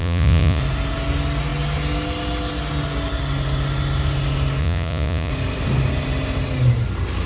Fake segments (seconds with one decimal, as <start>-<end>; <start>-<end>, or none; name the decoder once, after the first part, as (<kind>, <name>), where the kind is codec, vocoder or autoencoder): 0.0-0.6 (vocoder, Vocos); 4.6-5.3